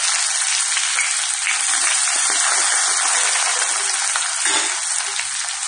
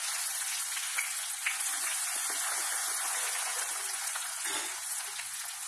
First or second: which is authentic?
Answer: first